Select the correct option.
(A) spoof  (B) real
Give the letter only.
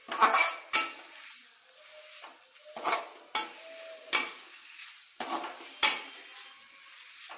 B